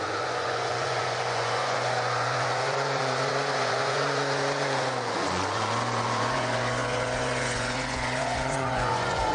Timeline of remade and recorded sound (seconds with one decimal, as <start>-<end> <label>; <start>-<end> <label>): 0.0-9.3 remade